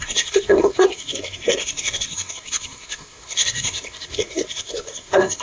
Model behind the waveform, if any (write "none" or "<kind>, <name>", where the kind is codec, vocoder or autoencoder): codec, SNAC